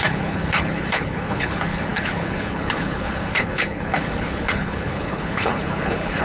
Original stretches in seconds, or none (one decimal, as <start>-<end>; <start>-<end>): none